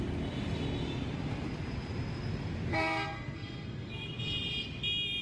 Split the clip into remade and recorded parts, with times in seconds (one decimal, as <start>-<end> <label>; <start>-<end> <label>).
0.0-2.7 recorded; 2.7-3.9 remade; 3.9-5.2 recorded